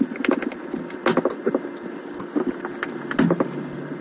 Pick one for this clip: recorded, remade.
recorded